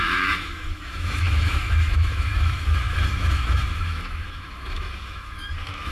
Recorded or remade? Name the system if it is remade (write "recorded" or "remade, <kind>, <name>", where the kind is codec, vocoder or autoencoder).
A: remade, autoencoder, DAC-VAE